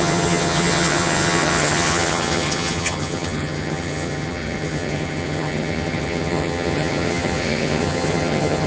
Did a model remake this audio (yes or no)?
yes